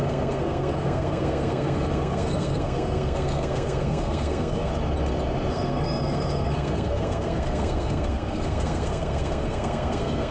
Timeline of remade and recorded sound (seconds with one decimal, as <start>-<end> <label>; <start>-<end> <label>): 0.0-4.7 remade; 4.7-5.5 recorded; 5.5-10.3 remade